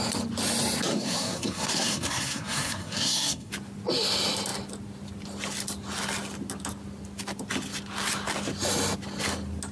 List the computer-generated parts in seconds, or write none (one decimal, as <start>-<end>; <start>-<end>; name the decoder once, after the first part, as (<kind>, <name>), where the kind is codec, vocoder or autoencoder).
0.9-3.5 (codec, SNAC)